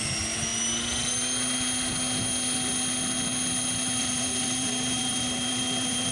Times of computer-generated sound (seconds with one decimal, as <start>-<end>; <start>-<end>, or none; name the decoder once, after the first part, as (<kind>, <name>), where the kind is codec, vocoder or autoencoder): 0.0-0.5 (vocoder, BigVGAN v2); 4.0-6.1